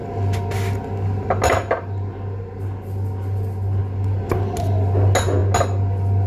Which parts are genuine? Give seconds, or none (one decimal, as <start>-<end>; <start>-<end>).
0.0-6.3